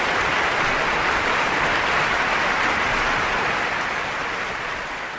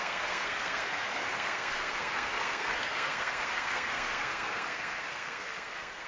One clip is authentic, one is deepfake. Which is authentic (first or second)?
first